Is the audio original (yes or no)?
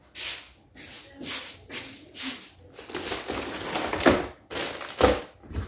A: yes